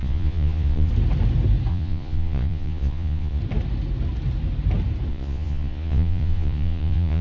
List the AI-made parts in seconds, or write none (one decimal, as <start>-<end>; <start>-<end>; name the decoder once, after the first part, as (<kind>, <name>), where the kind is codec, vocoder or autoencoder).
0.0-0.9 (vocoder, Vocos); 1.7-3.4; 5.1-7.2